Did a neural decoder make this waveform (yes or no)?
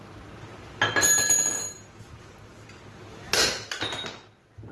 no